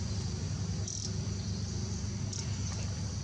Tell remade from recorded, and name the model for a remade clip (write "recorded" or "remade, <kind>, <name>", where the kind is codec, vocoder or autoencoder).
recorded